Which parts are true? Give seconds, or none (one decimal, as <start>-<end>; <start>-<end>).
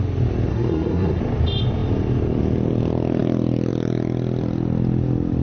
0.0-0.5; 1.2-5.4